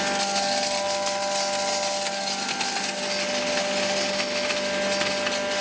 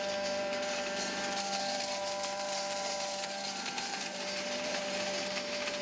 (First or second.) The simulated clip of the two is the second